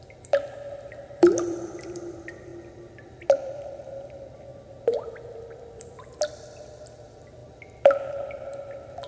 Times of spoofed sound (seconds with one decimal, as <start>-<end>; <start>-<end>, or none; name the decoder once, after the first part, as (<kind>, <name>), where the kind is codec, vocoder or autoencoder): 0.0-2.5 (vocoder, BigVGAN v2); 3.4-7.4; 8.1-9.1